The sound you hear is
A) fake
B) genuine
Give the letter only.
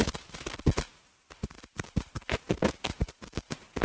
B